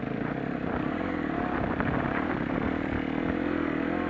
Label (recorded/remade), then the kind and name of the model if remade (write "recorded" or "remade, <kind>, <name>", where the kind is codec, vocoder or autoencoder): remade, vocoder, BigVGAN v2